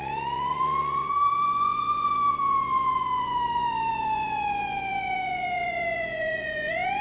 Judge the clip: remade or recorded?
remade